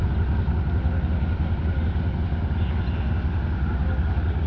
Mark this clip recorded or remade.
recorded